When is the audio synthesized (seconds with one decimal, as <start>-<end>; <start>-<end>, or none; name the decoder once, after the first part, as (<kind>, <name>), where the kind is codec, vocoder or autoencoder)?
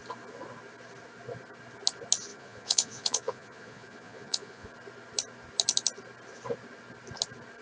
2.3-4.7 (vocoder, Vocos)